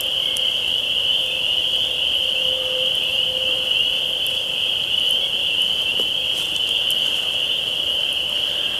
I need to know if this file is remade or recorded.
remade